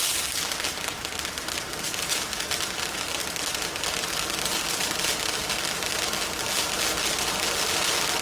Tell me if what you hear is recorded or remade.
recorded